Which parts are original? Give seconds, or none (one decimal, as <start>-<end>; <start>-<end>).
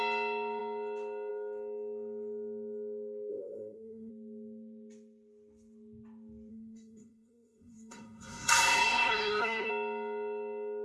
0.0-3.3; 4.1-6.5; 9.7-10.8